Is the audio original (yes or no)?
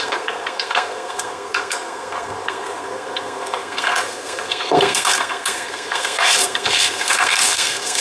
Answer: no